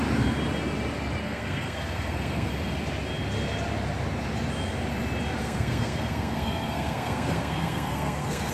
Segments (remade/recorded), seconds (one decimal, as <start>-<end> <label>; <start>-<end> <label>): 0.0-1.2 recorded; 1.2-2.5 remade; 2.5-5.4 recorded; 5.4-8.5 remade